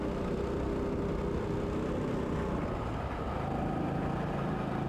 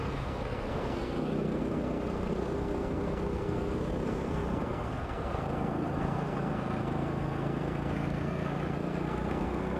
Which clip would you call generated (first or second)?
second